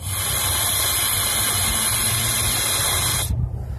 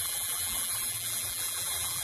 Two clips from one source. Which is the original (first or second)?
first